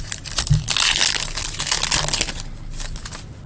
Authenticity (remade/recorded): recorded